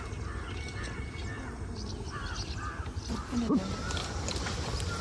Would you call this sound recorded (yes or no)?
yes